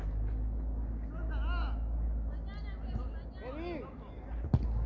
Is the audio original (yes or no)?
yes